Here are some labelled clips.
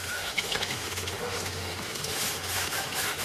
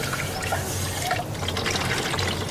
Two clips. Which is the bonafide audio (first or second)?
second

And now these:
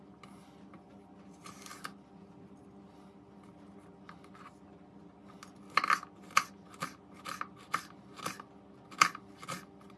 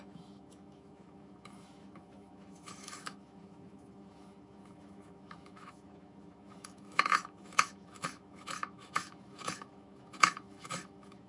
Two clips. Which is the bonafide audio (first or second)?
first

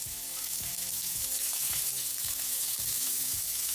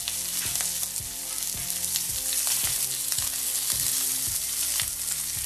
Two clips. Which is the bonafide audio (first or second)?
second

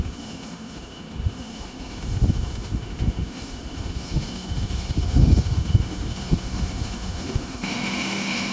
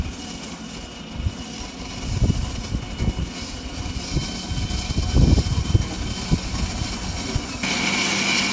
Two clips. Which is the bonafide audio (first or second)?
second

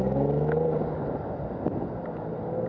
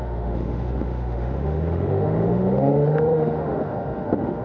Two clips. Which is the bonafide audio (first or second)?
first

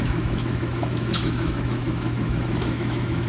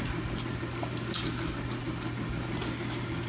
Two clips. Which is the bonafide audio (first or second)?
second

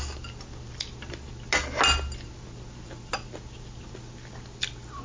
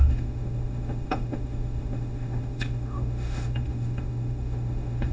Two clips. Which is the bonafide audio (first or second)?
first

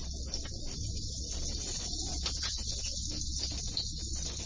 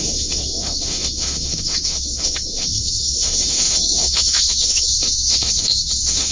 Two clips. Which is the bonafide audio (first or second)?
first